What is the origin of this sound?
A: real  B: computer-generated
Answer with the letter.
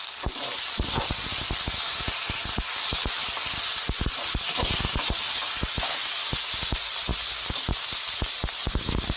A